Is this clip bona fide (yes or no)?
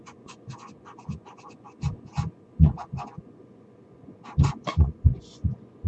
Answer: no